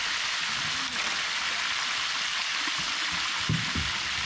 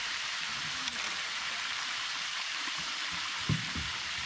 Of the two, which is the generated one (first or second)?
second